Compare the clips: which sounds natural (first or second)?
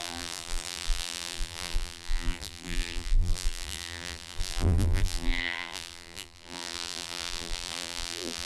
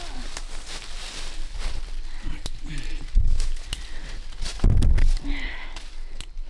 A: second